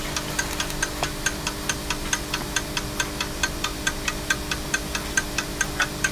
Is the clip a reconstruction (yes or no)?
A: no